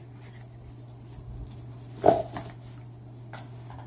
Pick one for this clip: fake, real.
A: real